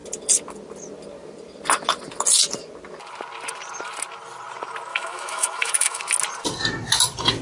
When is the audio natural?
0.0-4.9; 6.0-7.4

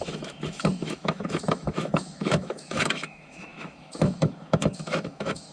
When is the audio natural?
none

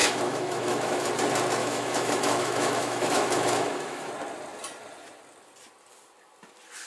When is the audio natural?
1.1-1.6; 4.1-6.9

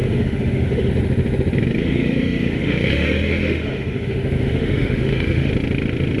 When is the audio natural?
0.9-1.8; 5.5-6.2

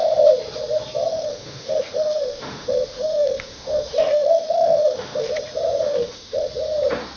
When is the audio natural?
0.0-1.1; 5.4-5.9; 6.5-7.2

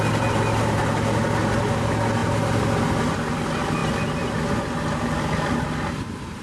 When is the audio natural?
0.0-6.4

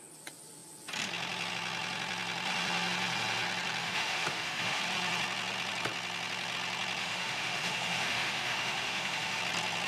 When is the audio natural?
0.0-3.8; 4.8-7.0; 9.4-9.9